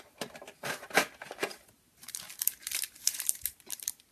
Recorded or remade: remade